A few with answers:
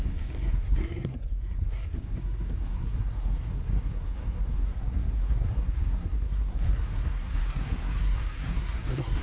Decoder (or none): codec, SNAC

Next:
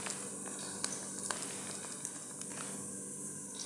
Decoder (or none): none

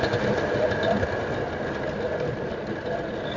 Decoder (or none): none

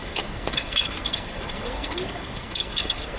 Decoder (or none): codec, SNAC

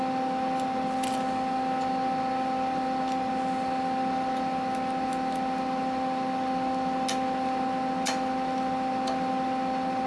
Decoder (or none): none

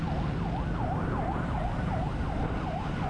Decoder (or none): none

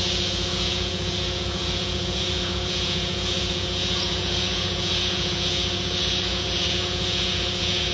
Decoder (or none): vocoder, Vocos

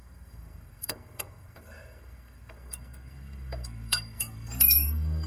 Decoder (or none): codec, SNAC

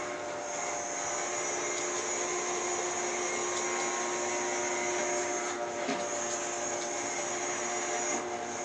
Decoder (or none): none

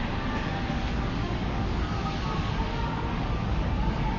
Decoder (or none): codec, DAC